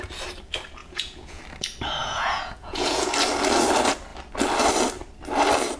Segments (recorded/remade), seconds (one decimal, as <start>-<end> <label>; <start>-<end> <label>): 0.0-0.8 recorded; 0.8-1.4 remade; 1.4-2.0 recorded; 2.0-3.1 remade; 3.1-5.8 recorded